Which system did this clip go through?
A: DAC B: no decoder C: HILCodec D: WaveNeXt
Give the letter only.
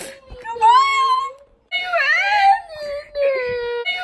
B